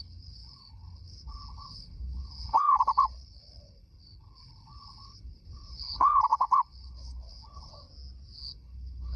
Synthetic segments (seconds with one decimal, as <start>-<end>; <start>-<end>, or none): 0.0-7.7; 8.4-9.2